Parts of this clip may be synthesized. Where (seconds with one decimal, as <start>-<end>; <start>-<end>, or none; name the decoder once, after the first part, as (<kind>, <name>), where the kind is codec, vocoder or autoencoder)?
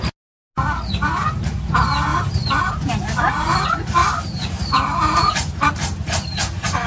none